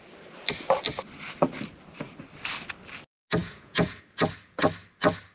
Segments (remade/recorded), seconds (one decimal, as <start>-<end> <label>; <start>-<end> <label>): 0.0-3.4 recorded; 3.4-4.0 remade; 4.0-5.3 recorded